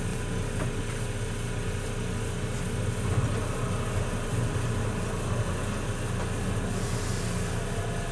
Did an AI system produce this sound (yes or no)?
no